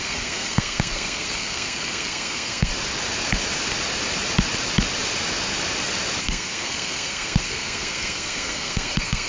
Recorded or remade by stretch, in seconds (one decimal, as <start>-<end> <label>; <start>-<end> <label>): 0.0-2.7 remade; 2.7-6.2 recorded; 6.2-9.3 remade